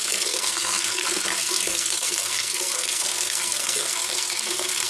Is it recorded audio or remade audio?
remade